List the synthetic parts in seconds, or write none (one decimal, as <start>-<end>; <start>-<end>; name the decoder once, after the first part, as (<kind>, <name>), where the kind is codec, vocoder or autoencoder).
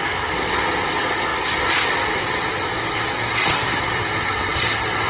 none